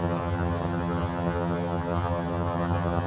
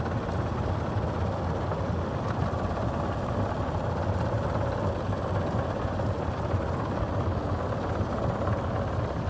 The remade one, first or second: first